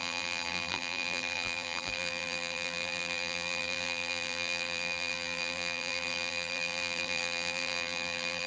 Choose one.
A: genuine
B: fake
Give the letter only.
B